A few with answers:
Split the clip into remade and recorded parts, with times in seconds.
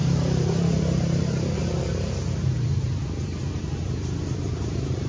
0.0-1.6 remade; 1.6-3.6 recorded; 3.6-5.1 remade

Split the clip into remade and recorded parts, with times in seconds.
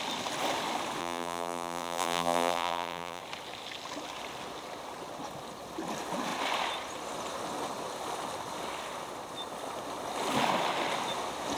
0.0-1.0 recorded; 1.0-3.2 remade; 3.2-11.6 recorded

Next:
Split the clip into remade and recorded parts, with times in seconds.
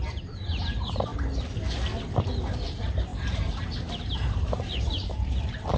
0.0-1.1 remade; 1.1-2.5 recorded; 2.5-5.8 remade